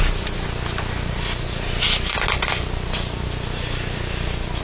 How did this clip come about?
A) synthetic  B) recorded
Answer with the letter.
B